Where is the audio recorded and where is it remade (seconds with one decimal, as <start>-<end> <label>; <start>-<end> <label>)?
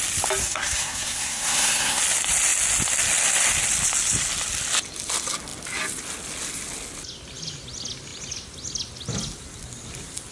0.0-0.4 recorded; 0.4-2.0 remade; 2.0-10.3 recorded